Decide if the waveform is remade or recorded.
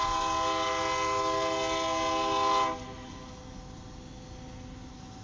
recorded